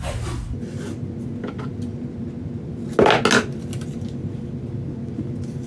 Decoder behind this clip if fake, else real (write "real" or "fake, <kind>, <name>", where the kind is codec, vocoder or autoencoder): real